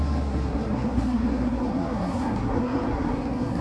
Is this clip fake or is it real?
fake